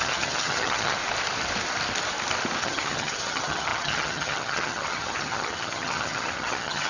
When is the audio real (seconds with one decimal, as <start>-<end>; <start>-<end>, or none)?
1.0-2.6